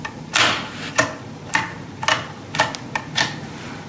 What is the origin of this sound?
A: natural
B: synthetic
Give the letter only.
A